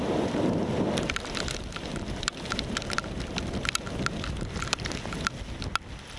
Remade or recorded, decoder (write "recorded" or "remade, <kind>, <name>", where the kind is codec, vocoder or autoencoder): recorded